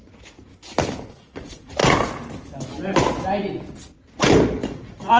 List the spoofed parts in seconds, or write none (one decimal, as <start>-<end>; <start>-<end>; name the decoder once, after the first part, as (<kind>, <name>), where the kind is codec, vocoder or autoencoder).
0.0-0.5 (vocoder, Vocos); 1.1-1.8; 4.7-5.2